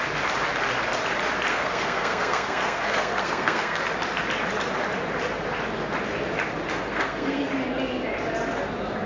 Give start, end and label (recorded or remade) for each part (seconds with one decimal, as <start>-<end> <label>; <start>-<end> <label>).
0.0-1.5 recorded; 1.5-3.8 remade; 3.8-6.7 recorded; 6.7-7.5 remade; 7.5-9.1 recorded